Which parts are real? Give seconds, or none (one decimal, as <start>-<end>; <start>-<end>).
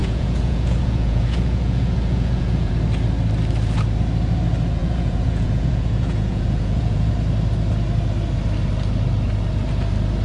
2.7-4.8; 7.1-10.2